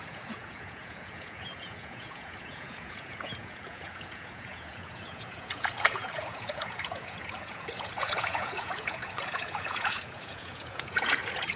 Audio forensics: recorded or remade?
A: remade